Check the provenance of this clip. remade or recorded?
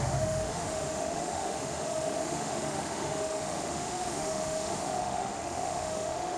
remade